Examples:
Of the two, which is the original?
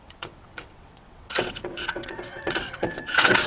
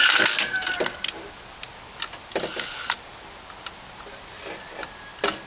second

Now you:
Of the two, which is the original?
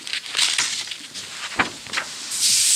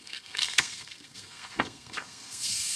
first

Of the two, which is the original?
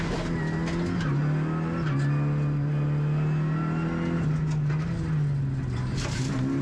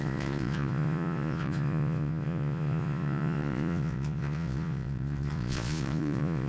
first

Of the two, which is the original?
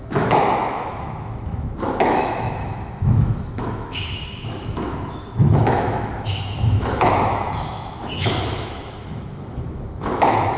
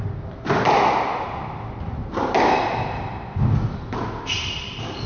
second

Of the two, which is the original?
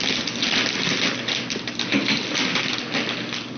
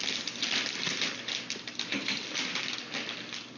first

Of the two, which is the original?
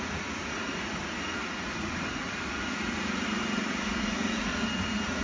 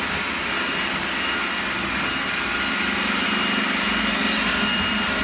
second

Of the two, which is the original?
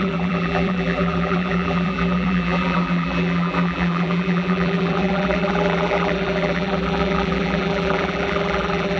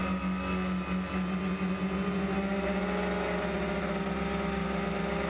second